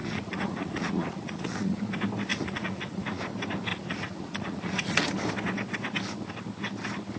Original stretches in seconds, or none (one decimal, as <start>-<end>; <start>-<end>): 1.8-2.3; 3.2-3.7; 5.1-7.2